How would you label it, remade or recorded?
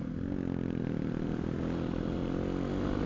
recorded